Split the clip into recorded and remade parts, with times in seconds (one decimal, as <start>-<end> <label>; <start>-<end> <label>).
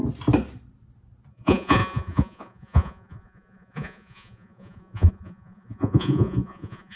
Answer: 0.0-1.3 recorded; 1.3-7.0 remade